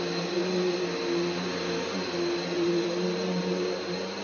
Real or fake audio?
real